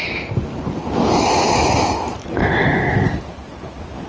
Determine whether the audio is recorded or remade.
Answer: recorded